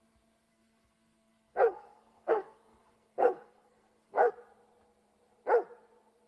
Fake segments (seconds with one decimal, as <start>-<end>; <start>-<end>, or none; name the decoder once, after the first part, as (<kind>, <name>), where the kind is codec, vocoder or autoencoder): 0.5-4.3 (codec, SNAC)